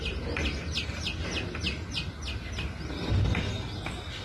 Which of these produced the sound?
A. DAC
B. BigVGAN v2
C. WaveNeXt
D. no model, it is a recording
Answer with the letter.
D